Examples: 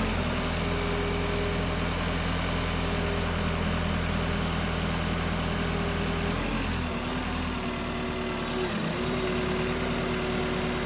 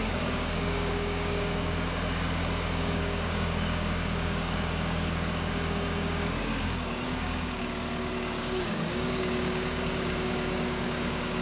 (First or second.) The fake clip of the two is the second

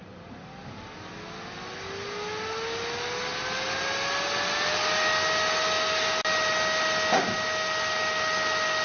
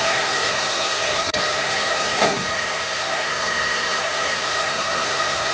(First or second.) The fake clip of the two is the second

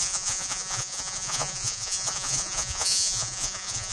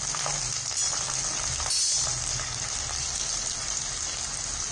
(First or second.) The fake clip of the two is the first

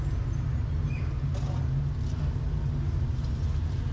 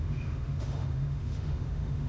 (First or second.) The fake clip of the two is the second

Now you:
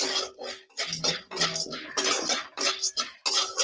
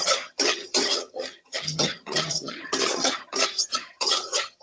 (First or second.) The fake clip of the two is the second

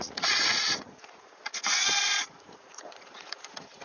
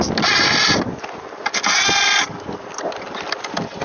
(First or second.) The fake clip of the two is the first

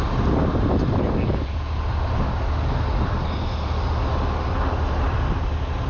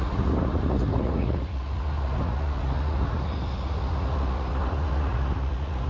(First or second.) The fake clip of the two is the second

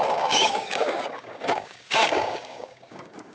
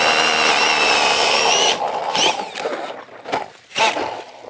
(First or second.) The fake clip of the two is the first